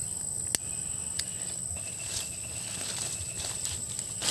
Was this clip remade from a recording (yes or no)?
no